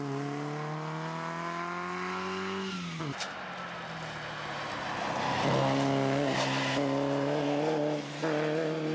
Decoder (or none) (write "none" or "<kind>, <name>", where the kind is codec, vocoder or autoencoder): none